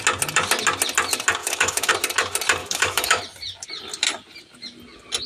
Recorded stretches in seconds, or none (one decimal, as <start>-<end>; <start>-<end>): 0.0-1.4; 1.9-2.6; 3.2-5.3